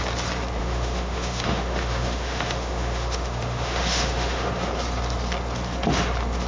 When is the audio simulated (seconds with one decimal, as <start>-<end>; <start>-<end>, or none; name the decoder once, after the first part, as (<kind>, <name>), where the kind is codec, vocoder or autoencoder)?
0.6-4.5 (autoencoder, DAC-VAE)